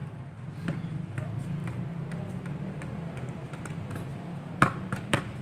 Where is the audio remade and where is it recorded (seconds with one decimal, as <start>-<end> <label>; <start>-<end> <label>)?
0.0-4.1 recorded; 4.1-5.4 remade